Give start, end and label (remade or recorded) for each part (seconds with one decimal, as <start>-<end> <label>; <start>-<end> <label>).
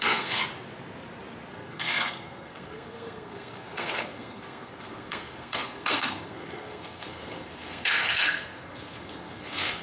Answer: 0.0-0.4 remade; 0.4-1.5 recorded; 1.5-9.8 remade